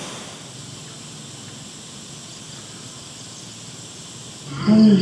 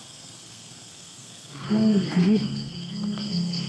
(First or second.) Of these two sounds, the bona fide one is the first